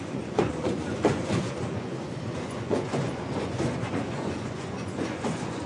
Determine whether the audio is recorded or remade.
remade